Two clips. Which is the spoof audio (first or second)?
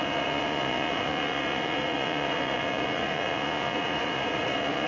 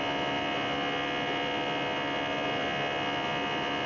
first